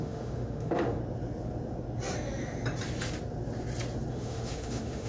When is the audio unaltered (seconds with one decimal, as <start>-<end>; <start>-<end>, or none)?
1.0-4.1